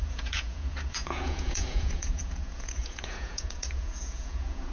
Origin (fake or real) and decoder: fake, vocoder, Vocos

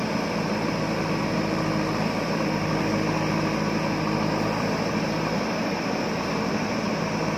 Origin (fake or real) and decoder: real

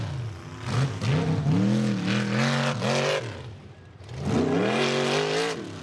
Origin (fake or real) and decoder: real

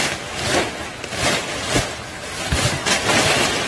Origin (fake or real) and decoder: real